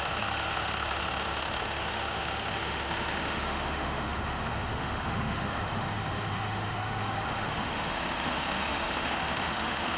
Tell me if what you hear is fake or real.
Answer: fake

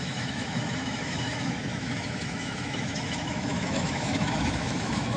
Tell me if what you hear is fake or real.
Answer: fake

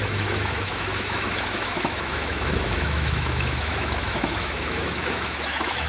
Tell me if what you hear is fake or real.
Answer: fake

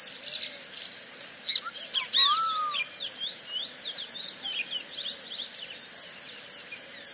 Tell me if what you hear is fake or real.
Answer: real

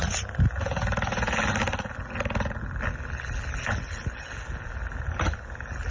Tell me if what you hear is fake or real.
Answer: real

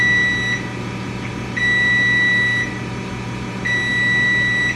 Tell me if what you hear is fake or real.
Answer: real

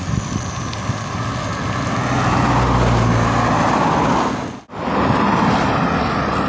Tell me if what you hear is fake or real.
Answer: real